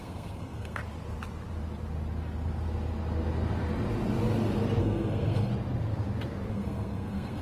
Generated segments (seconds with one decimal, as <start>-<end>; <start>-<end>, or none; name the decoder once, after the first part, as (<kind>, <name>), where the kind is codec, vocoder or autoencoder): 0.0-0.8 (codec, SNAC); 4.8-5.5; 6.5-7.4